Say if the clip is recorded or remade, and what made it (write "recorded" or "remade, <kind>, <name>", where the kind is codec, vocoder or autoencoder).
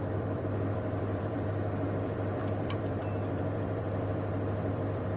remade, vocoder, BigVGAN v2